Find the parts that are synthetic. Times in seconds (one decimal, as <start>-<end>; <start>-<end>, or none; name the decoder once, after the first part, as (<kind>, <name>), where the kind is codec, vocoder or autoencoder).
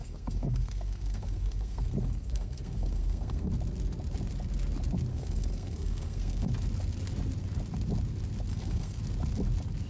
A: 0.0-3.5 (codec, SNAC); 5.1-6.5; 8.5-9.0